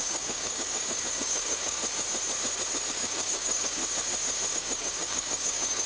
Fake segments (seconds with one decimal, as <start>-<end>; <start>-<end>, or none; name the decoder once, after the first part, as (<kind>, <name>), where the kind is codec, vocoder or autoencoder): 0.0-1.8 (codec, DAC); 2.9-3.8; 4.5-5.9